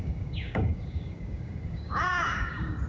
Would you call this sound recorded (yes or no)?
no